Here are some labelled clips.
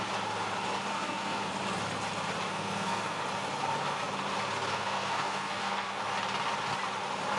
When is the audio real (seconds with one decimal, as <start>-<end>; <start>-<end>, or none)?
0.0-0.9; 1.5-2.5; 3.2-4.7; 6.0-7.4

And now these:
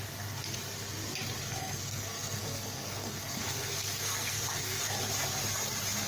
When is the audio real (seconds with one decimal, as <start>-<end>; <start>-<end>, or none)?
0.0-1.4; 5.1-6.1

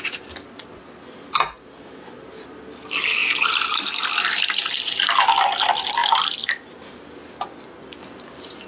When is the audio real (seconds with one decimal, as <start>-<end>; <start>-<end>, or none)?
0.0-8.7

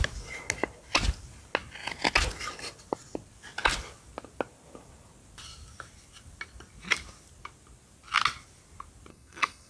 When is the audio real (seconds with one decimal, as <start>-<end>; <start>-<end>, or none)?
0.0-9.1

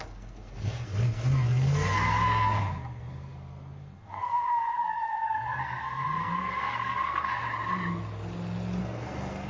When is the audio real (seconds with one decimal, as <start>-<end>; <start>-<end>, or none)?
7.4-8.8